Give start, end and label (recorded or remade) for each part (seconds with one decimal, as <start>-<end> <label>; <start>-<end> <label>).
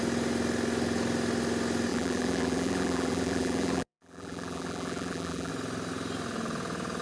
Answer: 0.0-1.9 recorded; 1.9-5.5 remade; 5.5-7.0 recorded